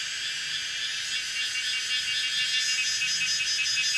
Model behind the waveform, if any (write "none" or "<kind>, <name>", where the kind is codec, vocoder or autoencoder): none